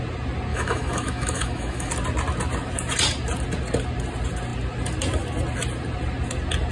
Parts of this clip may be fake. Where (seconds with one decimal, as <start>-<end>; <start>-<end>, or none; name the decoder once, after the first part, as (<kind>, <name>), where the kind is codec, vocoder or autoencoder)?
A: 0.5-1.9 (autoencoder, DAC-VAE)